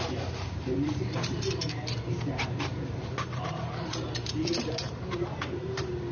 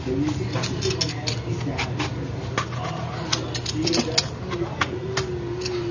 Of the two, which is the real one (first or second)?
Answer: second